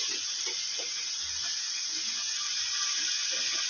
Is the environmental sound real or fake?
real